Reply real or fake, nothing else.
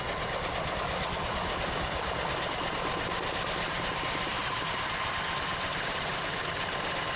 real